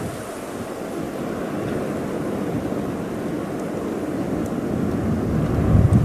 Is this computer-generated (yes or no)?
no